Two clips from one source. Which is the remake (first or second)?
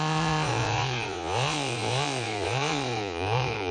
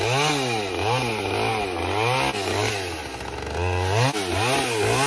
first